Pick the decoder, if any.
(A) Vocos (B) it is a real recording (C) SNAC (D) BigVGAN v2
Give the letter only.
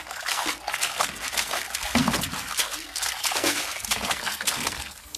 C